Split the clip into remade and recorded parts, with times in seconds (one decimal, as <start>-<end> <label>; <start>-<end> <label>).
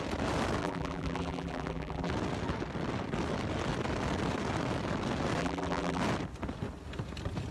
0.0-0.6 recorded; 0.6-2.1 remade; 2.1-5.4 recorded; 5.4-6.0 remade; 6.0-7.5 recorded